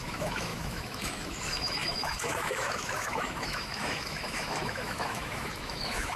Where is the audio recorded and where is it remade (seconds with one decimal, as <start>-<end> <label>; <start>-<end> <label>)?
0.0-6.2 remade